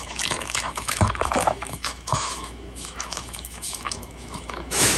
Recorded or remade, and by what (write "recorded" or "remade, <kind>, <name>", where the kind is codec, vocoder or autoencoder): remade, autoencoder, DAC-VAE